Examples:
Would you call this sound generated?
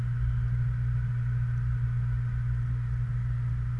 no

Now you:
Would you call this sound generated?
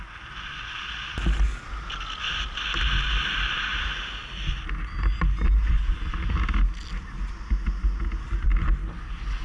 no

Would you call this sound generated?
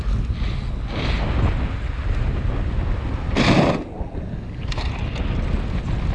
no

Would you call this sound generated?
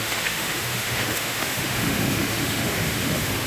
yes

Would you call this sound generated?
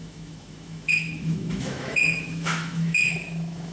yes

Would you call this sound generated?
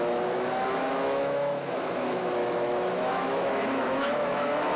yes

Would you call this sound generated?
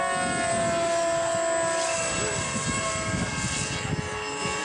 no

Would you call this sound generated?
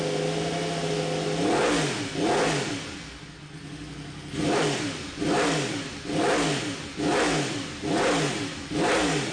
no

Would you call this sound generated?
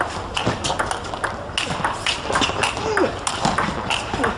no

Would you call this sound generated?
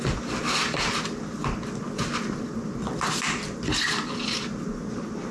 no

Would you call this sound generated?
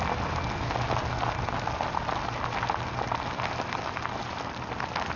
no